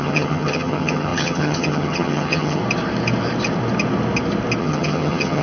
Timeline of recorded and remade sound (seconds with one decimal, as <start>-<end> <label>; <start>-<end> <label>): 0.0-2.6 remade; 2.6-4.6 recorded; 4.6-5.4 remade